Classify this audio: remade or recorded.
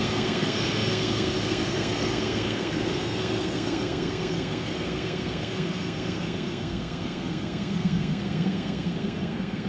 remade